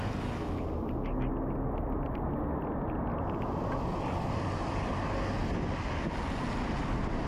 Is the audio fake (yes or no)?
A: no